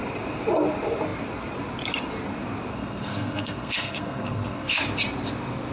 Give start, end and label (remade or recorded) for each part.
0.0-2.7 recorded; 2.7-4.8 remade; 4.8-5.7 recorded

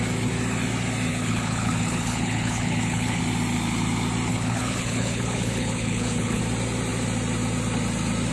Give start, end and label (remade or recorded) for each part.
0.0-1.1 recorded; 1.1-3.2 remade; 3.2-4.3 recorded; 4.3-6.4 remade; 6.4-8.3 recorded

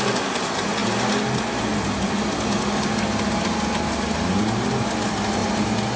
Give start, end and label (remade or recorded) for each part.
0.0-6.0 recorded

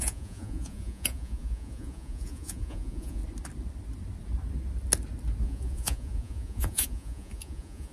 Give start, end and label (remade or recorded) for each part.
0.0-3.2 remade; 3.2-5.4 recorded; 5.4-7.9 remade

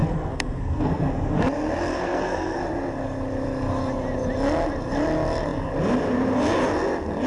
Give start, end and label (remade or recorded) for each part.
0.0-1.4 remade; 1.4-1.9 recorded; 1.9-2.6 remade; 2.6-7.3 recorded

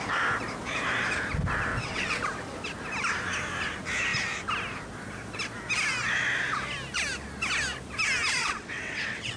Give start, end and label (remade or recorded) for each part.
0.0-1.7 recorded; 1.7-2.2 remade; 2.2-8.4 recorded; 8.4-9.4 remade

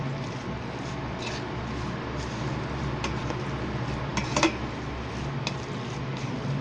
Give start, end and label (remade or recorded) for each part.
0.0-6.6 recorded